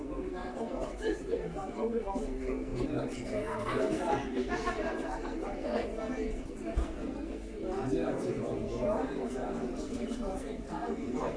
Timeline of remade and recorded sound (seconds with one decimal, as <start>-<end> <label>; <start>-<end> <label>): 0.0-11.4 remade